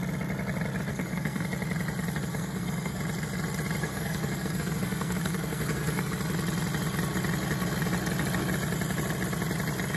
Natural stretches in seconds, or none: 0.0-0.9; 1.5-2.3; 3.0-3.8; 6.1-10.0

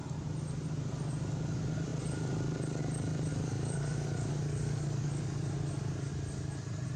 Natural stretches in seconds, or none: 0.0-3.3; 6.1-7.0

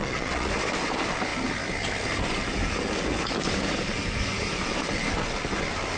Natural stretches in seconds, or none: 0.5-6.0

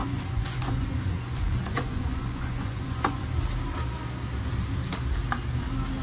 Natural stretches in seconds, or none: 3.2-6.0

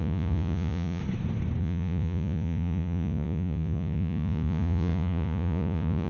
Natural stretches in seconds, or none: 1.0-1.6

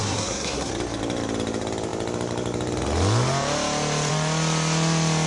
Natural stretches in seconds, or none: 0.7-5.3

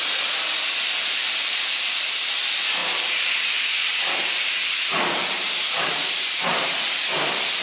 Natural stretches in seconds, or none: 0.0-2.8; 3.3-3.8

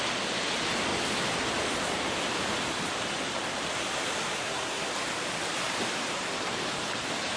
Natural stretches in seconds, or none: 0.0-4.4; 4.9-7.4